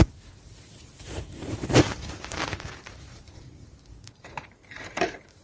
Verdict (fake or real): fake